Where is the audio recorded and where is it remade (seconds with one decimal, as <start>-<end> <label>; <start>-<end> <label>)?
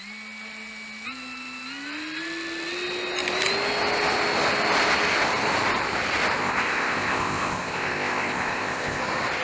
0.0-6.4 recorded; 6.4-9.0 remade; 9.0-9.4 recorded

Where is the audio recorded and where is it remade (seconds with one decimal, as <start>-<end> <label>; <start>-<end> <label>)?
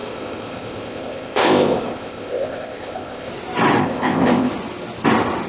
0.0-3.3 remade; 3.3-3.8 recorded; 3.8-4.5 remade; 4.5-5.5 recorded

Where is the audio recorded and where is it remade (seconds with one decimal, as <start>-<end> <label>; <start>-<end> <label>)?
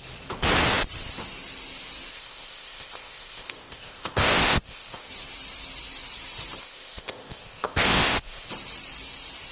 0.0-2.1 recorded; 2.1-5.1 remade; 5.1-6.6 recorded; 6.6-8.5 remade; 8.5-9.5 recorded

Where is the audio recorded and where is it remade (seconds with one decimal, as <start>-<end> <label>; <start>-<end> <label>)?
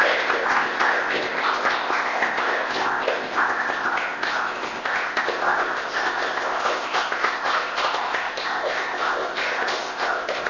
0.0-10.5 remade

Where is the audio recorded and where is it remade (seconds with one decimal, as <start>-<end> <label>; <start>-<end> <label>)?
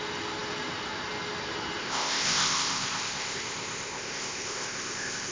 0.0-1.8 recorded; 1.8-5.3 remade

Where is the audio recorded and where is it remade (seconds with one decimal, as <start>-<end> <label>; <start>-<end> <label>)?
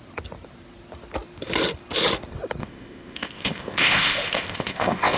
0.0-2.6 recorded; 2.6-5.2 remade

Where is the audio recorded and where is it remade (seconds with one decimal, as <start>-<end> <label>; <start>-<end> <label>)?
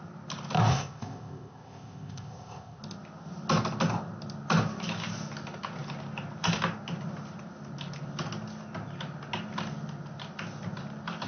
0.0-0.7 recorded; 0.7-2.8 remade; 2.8-11.3 recorded